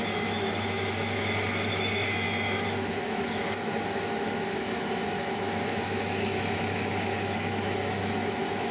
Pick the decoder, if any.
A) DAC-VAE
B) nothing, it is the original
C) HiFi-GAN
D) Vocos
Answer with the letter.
A